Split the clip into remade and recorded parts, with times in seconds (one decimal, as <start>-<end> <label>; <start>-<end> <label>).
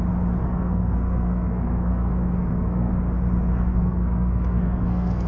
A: 0.0-0.4 recorded; 0.4-2.9 remade; 2.9-3.7 recorded; 3.7-5.3 remade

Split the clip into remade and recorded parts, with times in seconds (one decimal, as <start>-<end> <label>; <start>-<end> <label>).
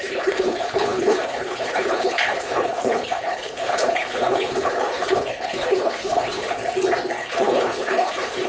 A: 0.0-6.6 remade; 6.6-7.2 recorded; 7.2-8.5 remade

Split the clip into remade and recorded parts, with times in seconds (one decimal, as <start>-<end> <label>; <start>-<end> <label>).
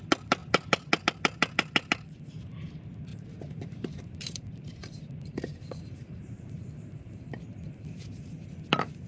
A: 0.0-3.1 recorded; 3.1-7.2 remade; 7.2-9.1 recorded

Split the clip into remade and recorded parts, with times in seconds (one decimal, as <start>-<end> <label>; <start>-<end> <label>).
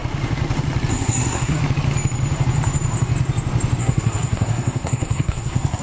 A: 0.0-0.9 recorded; 0.9-1.6 remade; 1.6-3.8 recorded; 3.8-5.8 remade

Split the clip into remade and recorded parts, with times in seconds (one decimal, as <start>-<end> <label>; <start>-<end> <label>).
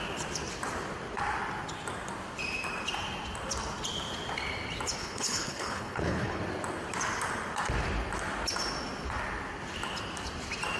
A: 0.0-5.0 recorded; 5.0-6.4 remade; 6.4-10.8 recorded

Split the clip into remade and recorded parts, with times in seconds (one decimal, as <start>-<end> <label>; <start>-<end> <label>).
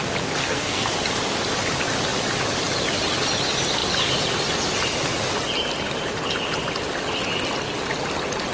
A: 0.0-0.4 recorded; 0.4-0.9 remade; 0.9-8.5 recorded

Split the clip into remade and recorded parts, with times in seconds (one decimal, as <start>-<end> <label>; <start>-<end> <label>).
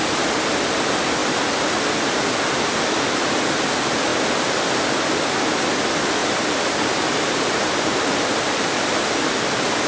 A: 0.0-6.2 recorded; 6.2-9.3 remade; 9.3-9.9 recorded